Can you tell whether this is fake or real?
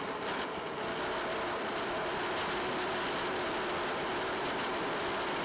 real